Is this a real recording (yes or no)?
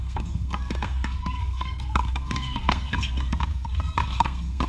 no